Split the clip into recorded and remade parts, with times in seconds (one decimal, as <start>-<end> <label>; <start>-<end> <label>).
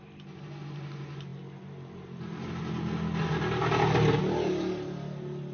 0.0-5.5 recorded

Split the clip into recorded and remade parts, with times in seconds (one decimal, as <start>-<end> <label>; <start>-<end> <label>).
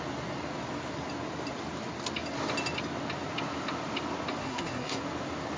0.0-4.4 recorded; 4.4-5.0 remade; 5.0-5.6 recorded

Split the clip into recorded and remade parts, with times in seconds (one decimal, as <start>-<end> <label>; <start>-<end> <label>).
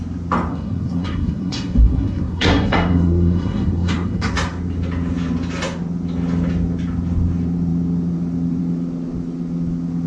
0.0-0.5 recorded; 0.5-4.3 remade; 4.3-10.1 recorded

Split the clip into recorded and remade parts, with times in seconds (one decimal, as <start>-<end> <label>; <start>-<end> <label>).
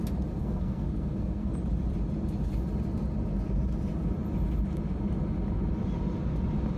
0.0-0.4 recorded; 0.4-1.5 remade; 1.5-6.8 recorded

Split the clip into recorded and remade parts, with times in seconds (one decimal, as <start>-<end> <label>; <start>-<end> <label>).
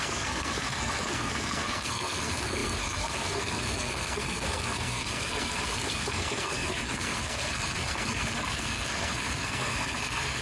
0.0-10.4 remade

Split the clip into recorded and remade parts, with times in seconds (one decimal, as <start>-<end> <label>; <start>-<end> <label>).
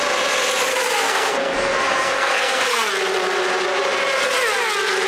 0.0-0.7 recorded; 0.7-2.9 remade; 2.9-5.1 recorded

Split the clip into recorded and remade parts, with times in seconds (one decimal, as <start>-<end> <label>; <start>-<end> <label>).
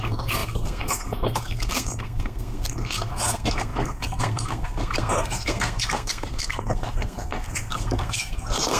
0.0-8.8 remade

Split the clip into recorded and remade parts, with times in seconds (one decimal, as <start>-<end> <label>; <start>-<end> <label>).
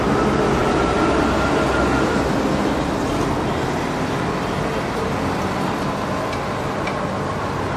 0.0-7.8 recorded